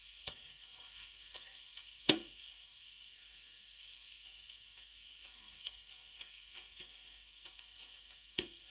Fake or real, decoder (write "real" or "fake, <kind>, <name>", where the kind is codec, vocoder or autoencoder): fake, codec, SNAC